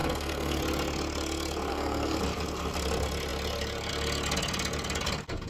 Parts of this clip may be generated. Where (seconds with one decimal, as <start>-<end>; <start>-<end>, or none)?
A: 0.0-0.6; 1.7-2.2